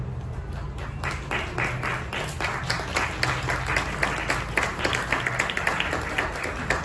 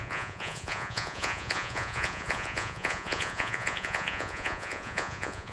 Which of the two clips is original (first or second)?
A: first